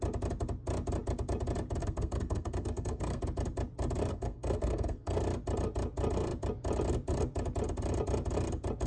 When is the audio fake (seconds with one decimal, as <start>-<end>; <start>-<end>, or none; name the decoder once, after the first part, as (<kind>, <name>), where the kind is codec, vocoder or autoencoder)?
1.8-3.2 (codec, SNAC); 4.1-5.2